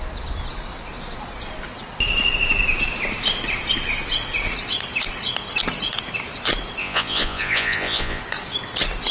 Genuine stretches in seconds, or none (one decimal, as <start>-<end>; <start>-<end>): 0.0-6.8; 8.2-9.1

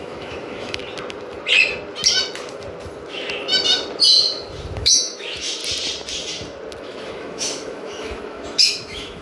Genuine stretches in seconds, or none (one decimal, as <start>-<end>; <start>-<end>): 0.8-4.8; 5.6-6.8

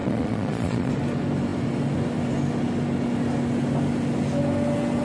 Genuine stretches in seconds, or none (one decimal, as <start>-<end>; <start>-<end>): 0.9-5.0

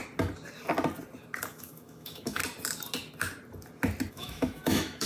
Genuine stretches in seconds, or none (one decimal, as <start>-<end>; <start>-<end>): 0.0-1.5; 2.4-4.1